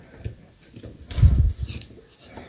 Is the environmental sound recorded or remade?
recorded